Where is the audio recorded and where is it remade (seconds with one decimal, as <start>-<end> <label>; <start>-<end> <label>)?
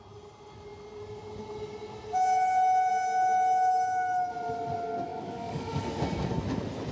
0.0-5.1 recorded; 5.1-6.0 remade; 6.0-6.9 recorded